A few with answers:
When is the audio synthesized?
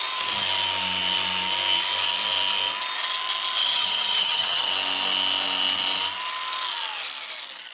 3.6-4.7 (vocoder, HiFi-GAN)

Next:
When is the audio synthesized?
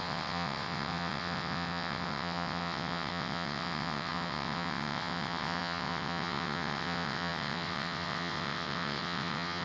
0.0-9.6 (vocoder, WaveNeXt)